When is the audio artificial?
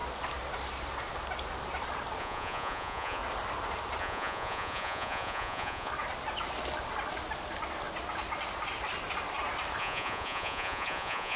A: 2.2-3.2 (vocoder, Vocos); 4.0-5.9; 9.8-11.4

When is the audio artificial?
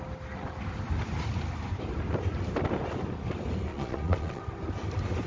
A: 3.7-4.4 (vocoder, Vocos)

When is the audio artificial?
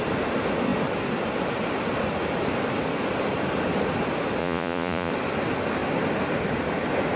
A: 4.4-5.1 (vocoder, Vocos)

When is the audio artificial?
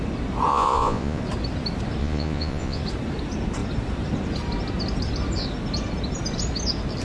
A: 0.5-1.2 (vocoder, Vocos); 2.0-2.8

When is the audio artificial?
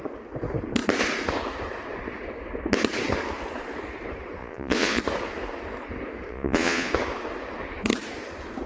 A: 4.4-5.0 (vocoder, Vocos); 6.3-6.9